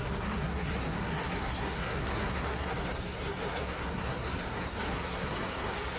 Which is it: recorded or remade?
remade